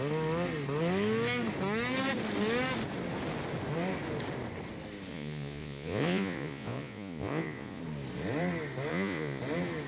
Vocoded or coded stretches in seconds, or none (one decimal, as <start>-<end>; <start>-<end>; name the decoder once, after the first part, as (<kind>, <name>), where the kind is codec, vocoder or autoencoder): 5.1-7.8 (vocoder, Vocos); 8.9-9.4